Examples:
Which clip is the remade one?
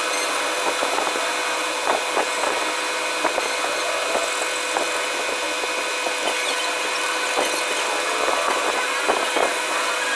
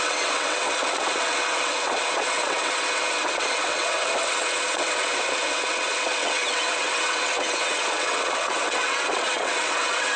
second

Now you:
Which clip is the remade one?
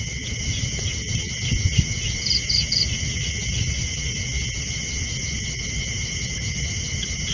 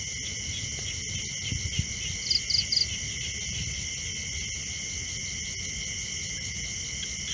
first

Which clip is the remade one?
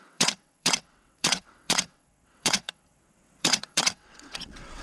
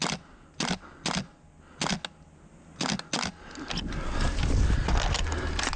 first